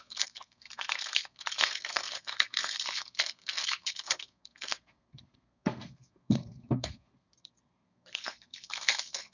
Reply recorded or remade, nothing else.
remade